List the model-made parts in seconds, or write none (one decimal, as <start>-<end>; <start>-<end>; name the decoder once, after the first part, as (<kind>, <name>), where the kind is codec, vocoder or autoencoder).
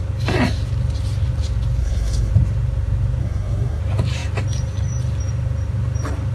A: 1.8-2.3 (codec, SNAC); 3.2-3.8